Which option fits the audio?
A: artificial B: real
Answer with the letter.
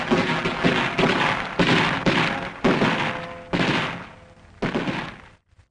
B